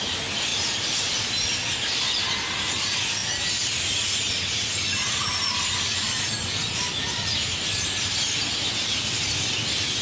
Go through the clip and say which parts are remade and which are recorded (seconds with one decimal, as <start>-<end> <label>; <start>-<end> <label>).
0.0-10.0 recorded